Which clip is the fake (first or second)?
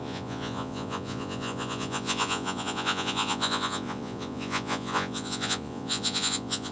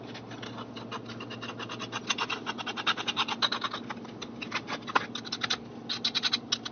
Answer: first